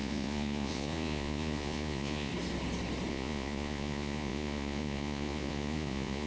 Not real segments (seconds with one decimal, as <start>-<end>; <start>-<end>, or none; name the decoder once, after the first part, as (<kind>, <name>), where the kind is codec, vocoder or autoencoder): 0.0-2.3 (vocoder, Vocos); 3.1-6.3

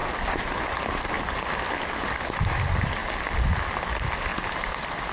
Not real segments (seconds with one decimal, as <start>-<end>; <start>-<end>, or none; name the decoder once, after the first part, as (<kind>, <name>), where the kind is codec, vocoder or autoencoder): 0.0-3.0 (vocoder, BigVGAN v2); 3.8-4.3

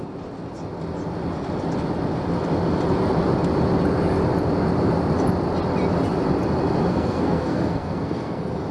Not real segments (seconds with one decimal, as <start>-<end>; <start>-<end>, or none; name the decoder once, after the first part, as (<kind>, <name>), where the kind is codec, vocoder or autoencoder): 6.9-8.7 (codec, SNAC)

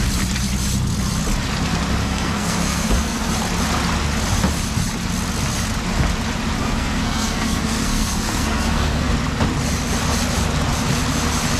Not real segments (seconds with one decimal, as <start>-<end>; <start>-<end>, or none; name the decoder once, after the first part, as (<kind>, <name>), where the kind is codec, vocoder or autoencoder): 2.0-3.3 (codec, SNAC); 6.6-9.1

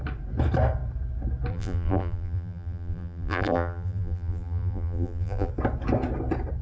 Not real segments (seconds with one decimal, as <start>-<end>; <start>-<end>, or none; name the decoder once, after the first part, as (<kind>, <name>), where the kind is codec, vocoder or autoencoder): 1.5-5.5 (vocoder, BigVGAN v2)

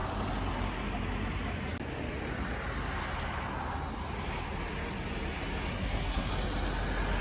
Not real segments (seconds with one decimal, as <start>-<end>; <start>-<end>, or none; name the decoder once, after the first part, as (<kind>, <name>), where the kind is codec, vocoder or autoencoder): 5.7-6.3 (codec, SNAC)

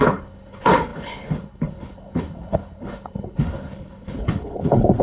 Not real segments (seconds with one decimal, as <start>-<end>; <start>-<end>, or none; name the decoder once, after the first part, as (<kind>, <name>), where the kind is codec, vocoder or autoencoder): 0.0-5.0 (codec, HILCodec)

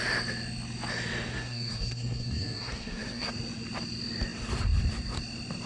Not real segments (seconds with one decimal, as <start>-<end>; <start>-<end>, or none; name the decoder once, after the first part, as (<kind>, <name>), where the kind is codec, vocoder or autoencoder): 1.3-3.3 (codec, SNAC)